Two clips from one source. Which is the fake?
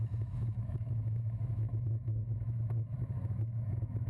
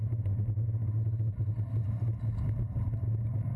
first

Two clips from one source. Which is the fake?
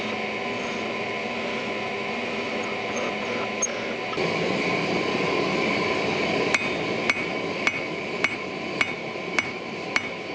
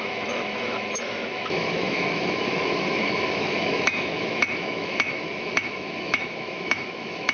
second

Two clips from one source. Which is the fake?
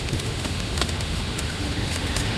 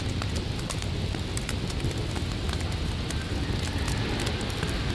first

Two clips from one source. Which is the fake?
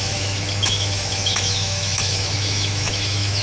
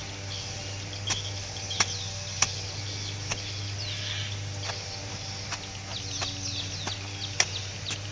first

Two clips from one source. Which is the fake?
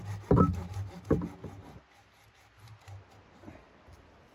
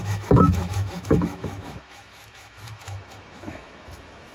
second